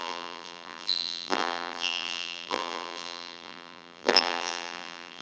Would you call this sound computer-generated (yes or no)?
yes